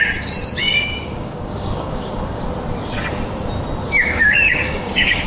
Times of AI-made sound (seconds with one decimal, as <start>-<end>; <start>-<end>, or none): 0.6-2.4; 4.0-5.3